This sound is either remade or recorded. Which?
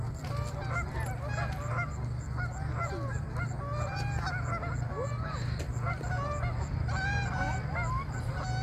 recorded